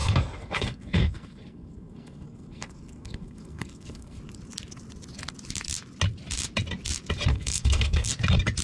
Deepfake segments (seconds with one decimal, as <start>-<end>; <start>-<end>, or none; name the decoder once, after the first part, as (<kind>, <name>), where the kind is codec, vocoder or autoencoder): 0.0-4.2 (codec, SNAC); 7.3-8.2

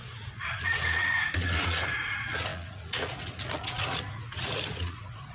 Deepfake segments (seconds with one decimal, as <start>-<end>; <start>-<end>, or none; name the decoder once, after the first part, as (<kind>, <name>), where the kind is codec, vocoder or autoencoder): 0.0-5.3 (vocoder, Vocos)